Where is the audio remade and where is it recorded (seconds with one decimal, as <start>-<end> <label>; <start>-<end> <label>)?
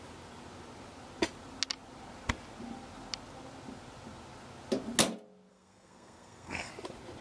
0.0-5.5 recorded; 5.5-6.7 remade; 6.7-7.2 recorded